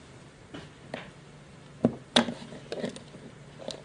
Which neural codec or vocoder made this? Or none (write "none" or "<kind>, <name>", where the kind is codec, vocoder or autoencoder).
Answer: none